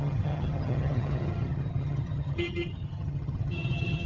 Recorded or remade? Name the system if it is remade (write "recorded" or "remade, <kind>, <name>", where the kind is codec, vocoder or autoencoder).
remade, vocoder, HiFi-GAN